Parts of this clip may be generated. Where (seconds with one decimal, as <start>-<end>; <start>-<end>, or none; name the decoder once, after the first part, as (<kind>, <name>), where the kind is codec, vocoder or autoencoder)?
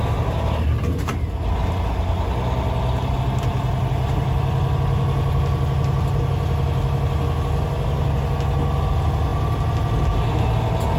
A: none